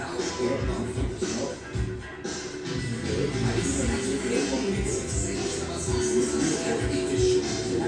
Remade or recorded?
recorded